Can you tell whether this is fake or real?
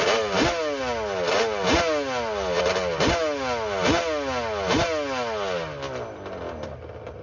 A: real